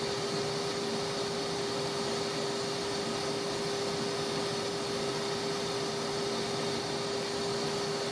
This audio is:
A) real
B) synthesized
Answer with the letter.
A